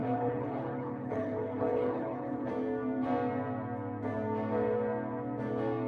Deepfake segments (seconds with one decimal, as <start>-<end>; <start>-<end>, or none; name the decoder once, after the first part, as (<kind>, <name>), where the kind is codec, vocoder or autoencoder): 0.0-2.5 (codec, HILCodec)